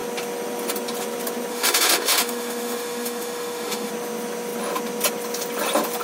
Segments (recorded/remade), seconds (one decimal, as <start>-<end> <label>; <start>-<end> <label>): 0.0-1.5 recorded; 1.5-3.9 remade; 3.9-6.0 recorded